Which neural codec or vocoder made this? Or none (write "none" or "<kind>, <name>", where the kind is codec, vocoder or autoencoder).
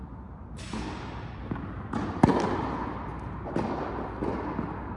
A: none